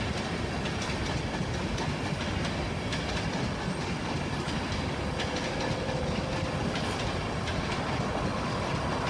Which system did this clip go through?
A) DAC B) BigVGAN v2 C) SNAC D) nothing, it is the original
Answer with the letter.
D